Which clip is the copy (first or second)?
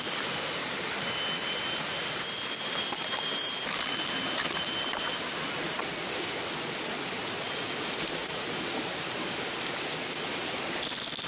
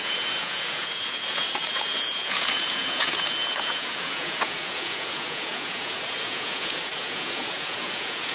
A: second